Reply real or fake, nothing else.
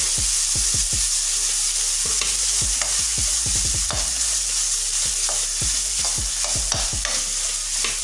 real